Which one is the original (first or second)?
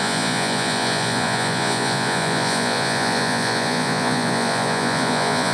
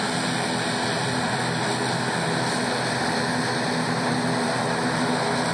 second